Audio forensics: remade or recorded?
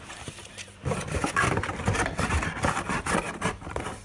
remade